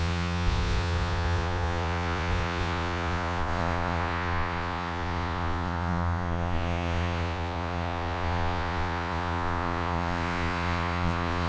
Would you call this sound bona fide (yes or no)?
no